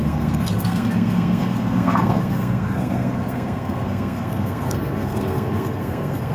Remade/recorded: remade